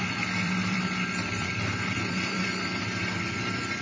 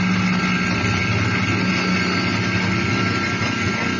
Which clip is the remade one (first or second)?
first